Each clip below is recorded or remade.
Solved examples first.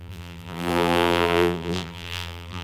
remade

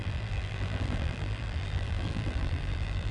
remade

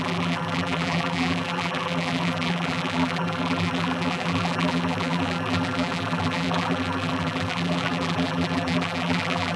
remade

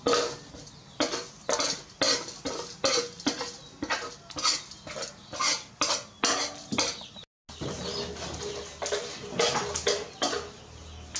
recorded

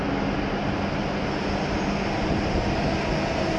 recorded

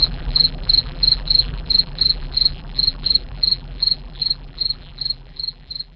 remade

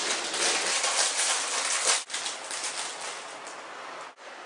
recorded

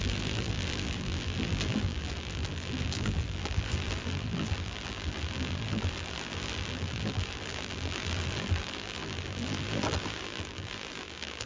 remade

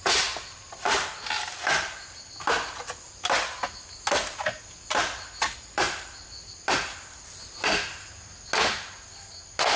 recorded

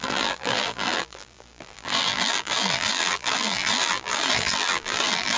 remade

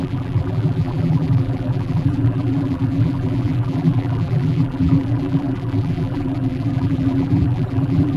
remade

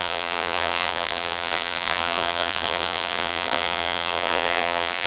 remade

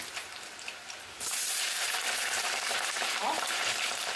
remade